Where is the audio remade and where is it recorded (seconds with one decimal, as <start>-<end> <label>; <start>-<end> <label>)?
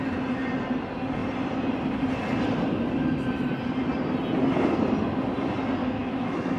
0.0-5.8 recorded; 5.8-6.6 remade